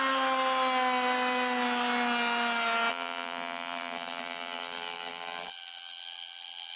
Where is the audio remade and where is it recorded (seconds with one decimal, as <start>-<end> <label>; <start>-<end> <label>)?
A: 0.0-2.9 recorded; 2.9-6.8 remade